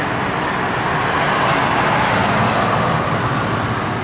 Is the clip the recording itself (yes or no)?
yes